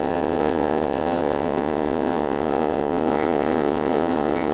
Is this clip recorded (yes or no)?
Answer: no